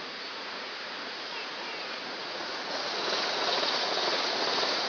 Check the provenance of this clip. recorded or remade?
remade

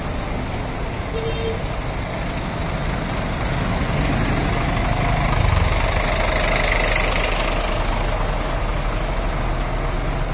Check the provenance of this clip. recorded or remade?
recorded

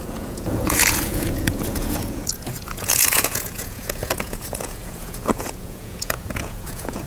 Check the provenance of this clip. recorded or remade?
remade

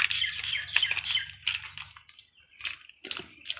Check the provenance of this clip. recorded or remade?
recorded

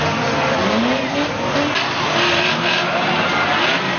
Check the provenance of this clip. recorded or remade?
recorded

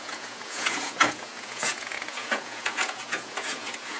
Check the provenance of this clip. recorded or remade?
remade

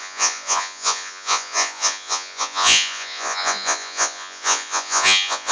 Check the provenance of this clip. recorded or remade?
remade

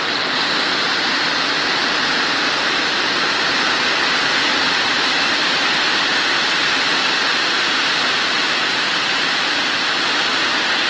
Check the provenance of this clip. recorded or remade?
recorded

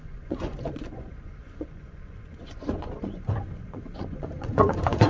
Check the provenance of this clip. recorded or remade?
remade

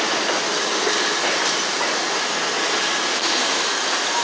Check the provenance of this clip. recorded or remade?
recorded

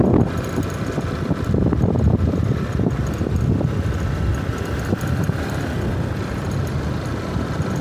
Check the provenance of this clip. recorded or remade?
recorded